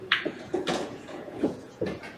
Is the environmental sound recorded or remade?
remade